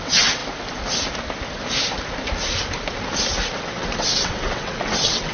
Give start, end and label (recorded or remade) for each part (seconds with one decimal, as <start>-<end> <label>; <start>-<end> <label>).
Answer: 0.0-0.4 remade; 0.4-3.6 recorded; 3.6-5.3 remade